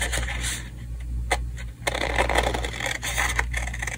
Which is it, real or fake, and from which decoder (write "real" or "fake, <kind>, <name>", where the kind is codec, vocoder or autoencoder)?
real